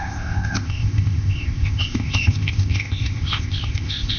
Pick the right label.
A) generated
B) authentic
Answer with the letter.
A